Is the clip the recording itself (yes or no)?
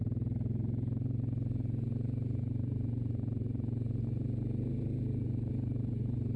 yes